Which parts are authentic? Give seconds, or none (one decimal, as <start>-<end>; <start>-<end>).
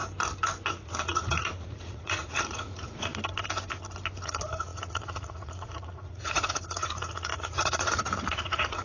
0.0-0.7; 3.1-4.2